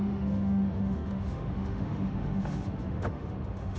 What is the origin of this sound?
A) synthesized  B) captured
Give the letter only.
A